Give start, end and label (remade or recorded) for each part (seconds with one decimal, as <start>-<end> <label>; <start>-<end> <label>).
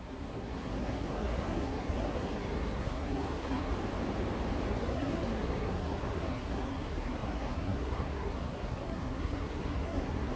0.0-3.7 remade; 3.7-4.7 recorded; 4.7-10.4 remade